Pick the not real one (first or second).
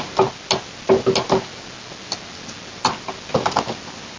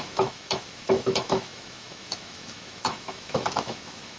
second